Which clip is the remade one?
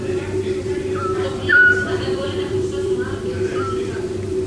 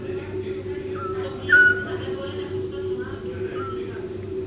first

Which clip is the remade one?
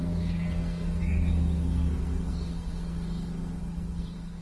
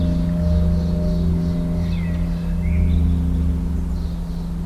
first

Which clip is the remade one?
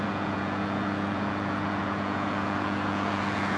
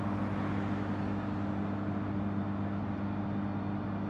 first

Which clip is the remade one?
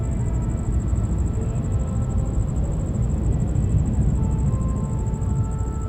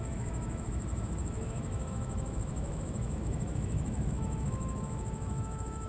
second